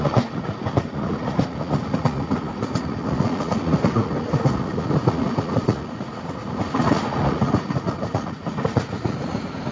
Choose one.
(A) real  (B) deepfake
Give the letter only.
B